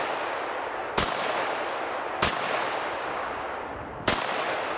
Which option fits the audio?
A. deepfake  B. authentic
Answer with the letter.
B